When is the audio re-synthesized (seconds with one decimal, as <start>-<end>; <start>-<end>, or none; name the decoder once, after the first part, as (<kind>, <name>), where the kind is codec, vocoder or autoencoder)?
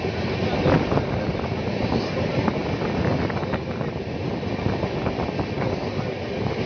none